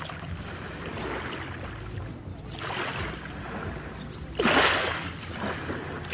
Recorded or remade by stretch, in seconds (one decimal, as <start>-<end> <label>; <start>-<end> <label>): 0.0-6.1 recorded